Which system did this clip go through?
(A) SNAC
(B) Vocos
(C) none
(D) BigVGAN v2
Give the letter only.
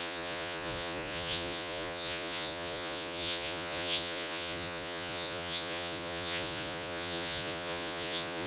B